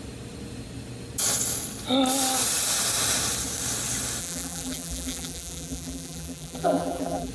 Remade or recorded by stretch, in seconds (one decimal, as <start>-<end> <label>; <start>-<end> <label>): 0.0-4.2 recorded; 4.2-7.3 remade